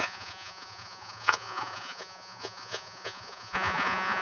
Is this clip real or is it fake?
fake